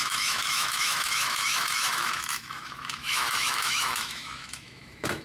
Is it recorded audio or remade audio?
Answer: remade